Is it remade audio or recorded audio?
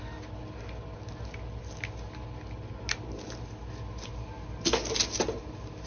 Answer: recorded